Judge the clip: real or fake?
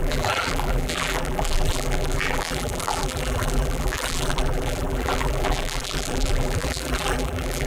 fake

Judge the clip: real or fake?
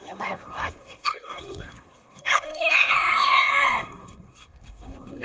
fake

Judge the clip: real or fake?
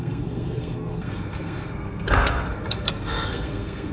fake